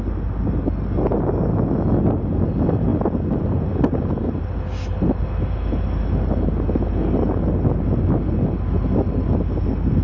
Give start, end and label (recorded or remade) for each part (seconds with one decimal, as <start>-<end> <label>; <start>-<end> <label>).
0.0-10.0 recorded